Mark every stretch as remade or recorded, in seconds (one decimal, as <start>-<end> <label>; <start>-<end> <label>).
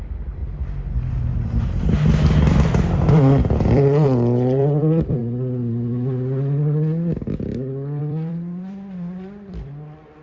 0.0-0.4 remade; 0.4-1.1 recorded; 1.1-5.2 remade; 5.2-8.0 recorded; 8.0-10.2 remade